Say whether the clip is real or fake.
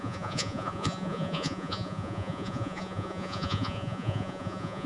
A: fake